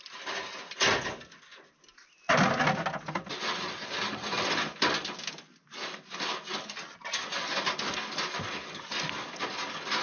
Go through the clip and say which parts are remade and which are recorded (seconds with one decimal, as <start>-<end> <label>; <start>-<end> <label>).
0.0-10.0 recorded